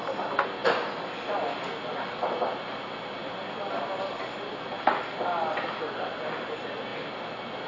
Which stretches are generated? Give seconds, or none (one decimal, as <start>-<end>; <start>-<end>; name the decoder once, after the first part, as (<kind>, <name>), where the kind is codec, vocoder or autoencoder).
none